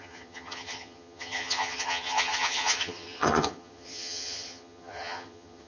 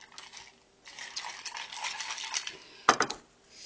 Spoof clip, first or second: first